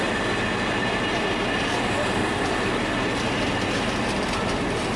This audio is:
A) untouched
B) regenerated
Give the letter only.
A